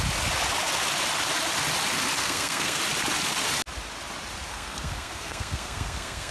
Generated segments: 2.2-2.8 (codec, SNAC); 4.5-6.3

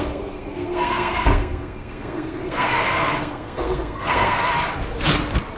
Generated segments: 0.0-4.4 (codec, SNAC)